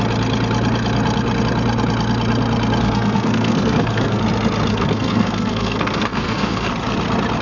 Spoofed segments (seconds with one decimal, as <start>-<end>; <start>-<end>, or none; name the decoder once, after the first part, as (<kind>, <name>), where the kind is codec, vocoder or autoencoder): 2.8-4.2 (codec, SNAC); 4.7-6.7